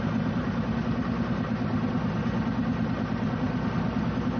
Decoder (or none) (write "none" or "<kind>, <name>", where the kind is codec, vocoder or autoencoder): none